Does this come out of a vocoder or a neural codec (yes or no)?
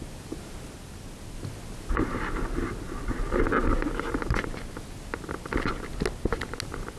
no